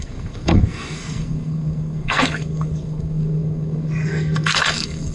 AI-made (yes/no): yes